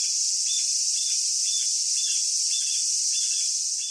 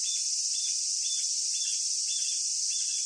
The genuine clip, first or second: first